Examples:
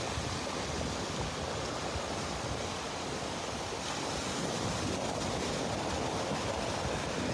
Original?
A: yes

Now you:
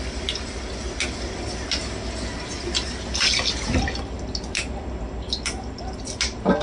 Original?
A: yes